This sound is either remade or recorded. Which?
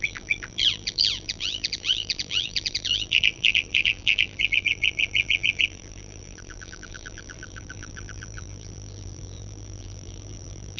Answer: remade